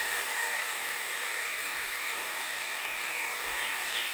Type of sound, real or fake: fake